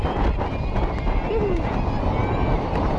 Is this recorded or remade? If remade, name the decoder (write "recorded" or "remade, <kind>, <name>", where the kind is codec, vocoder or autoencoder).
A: recorded